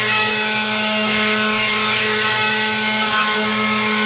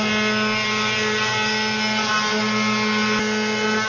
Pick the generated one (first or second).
first